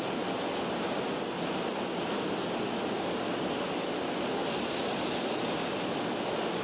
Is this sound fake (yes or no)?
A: no